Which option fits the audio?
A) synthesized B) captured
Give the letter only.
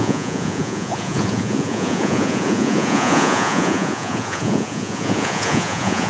A